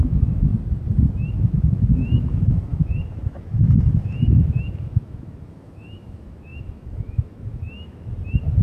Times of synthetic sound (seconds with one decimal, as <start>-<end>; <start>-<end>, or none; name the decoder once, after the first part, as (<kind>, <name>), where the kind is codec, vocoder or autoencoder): 0.0-0.5 (autoencoder, DAC-VAE); 1.3-8.1